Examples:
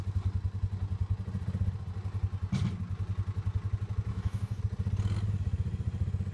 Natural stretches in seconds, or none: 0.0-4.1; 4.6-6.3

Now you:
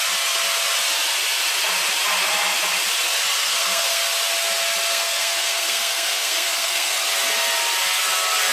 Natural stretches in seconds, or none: 0.0-3.4; 4.0-4.9; 7.0-8.5

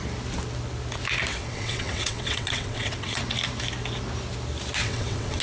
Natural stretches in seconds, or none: 0.0-1.3; 3.2-4.8

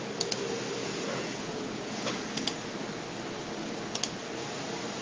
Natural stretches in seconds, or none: 0.0-0.8; 2.0-5.0

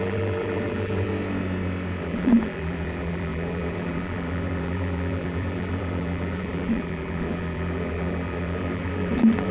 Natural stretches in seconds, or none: 1.1-2.0